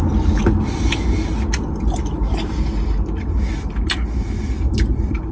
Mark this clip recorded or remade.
recorded